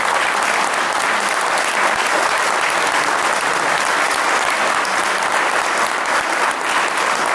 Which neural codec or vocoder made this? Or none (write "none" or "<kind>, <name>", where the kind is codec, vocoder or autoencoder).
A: none